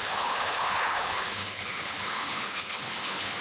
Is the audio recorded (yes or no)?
no